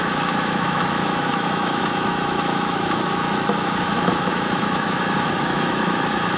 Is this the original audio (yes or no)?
no